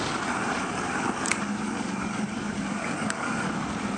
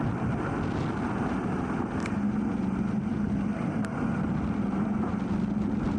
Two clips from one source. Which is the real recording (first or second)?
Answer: second